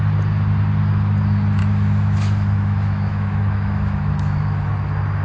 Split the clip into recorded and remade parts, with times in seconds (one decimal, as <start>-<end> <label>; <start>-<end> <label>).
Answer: 0.0-1.6 recorded; 1.6-4.7 remade; 4.7-5.2 recorded